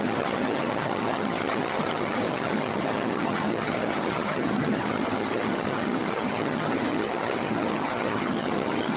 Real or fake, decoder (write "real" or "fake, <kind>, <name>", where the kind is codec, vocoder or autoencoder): fake, vocoder, HiFi-GAN